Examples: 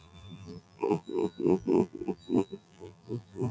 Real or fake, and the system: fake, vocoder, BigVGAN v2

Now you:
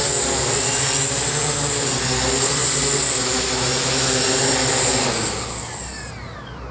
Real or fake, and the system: real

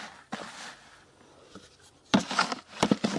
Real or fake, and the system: real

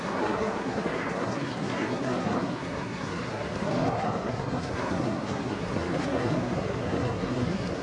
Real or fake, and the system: fake, codec, SNAC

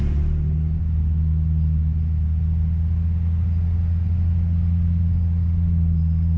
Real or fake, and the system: real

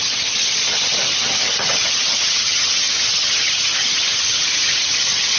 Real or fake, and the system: fake, vocoder, HiFi-GAN